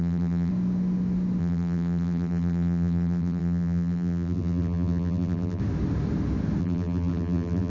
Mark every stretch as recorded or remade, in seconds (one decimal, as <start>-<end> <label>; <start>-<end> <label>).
0.0-0.5 remade; 0.5-1.4 recorded; 1.4-5.6 remade; 5.6-6.6 recorded; 6.6-7.7 remade

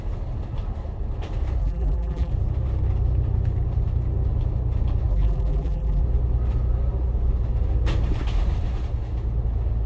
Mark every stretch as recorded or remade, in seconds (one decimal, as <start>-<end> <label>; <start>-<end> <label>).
0.0-1.6 recorded; 1.6-2.3 remade; 2.3-5.1 recorded; 5.1-6.0 remade; 6.0-9.9 recorded

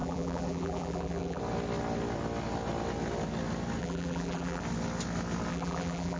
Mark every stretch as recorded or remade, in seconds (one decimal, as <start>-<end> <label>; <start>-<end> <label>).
0.0-1.4 remade; 1.4-3.8 recorded; 3.8-4.6 remade; 4.6-5.5 recorded; 5.5-6.2 remade

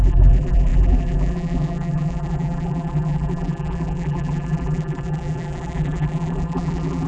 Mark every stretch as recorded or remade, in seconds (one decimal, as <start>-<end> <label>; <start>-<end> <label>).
0.0-7.1 remade

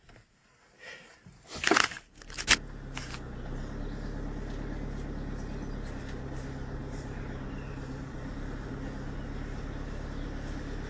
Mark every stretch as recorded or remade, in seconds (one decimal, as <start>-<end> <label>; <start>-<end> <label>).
0.0-6.8 recorded; 6.8-8.7 remade; 8.7-10.9 recorded

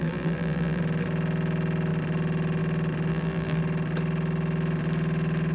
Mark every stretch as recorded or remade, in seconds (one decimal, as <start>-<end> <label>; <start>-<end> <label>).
0.0-0.8 remade; 0.8-3.1 recorded; 3.1-3.6 remade; 3.6-5.5 recorded

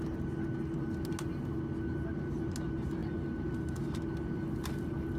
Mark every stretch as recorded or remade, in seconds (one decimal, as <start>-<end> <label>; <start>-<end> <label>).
0.0-5.2 recorded

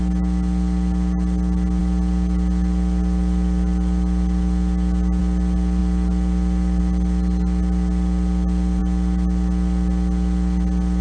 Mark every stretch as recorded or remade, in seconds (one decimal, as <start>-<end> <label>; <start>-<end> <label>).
0.0-11.0 recorded